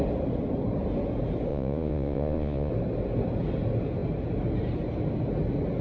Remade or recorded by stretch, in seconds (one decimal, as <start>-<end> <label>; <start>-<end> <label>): 0.0-1.5 recorded; 1.5-2.7 remade; 2.7-5.8 recorded